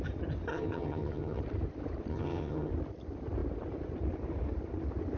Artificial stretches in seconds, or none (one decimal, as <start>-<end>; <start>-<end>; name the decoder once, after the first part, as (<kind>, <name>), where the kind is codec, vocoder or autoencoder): 0.5-1.4 (vocoder, HiFi-GAN); 2.1-2.7